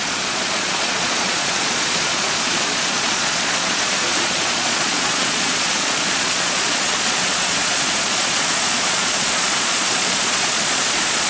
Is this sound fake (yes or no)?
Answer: yes